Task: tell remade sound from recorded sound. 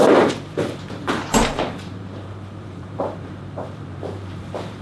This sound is remade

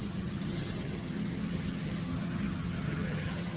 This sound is remade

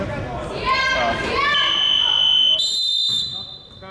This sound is recorded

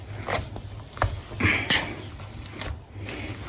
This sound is recorded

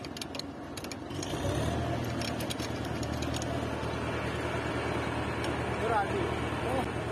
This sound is recorded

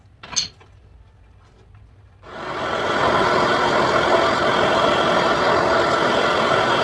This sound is recorded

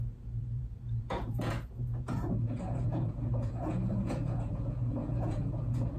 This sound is remade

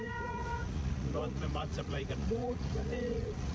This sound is remade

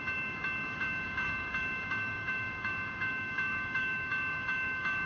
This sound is remade